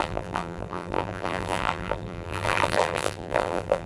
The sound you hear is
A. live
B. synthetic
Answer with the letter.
B